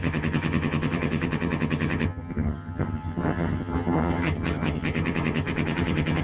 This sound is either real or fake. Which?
fake